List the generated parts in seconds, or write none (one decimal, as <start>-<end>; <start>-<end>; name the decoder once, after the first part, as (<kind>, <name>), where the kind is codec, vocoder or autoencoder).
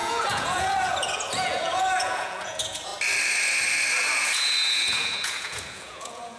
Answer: 0.0-2.9 (vocoder, Vocos); 4.2-6.4